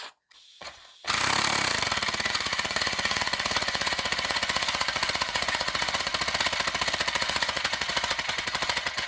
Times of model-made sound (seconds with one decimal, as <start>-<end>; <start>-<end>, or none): 0.0-0.8; 2.3-6.1; 7.2-9.1